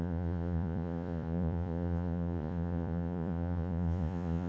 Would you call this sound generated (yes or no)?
yes